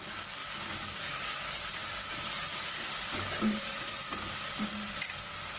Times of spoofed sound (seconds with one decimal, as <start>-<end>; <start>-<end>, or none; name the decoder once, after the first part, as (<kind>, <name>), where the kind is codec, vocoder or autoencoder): 2.5-4.0 (vocoder, BigVGAN v2)